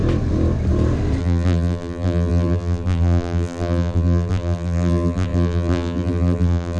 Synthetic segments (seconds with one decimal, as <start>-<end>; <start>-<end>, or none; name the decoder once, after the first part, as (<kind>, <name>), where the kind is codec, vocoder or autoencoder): 1.2-6.8 (vocoder, BigVGAN v2)